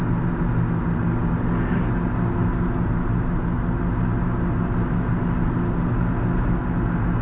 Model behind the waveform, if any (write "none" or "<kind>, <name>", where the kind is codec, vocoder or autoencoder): none